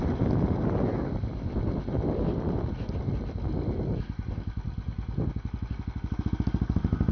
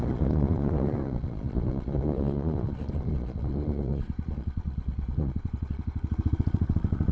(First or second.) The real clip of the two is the first